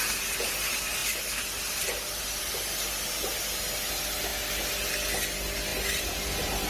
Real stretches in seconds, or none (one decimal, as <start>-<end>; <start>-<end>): 0.0-5.7